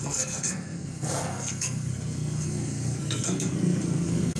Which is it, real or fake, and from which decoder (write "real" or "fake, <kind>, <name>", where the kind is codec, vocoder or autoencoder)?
fake, codec, SNAC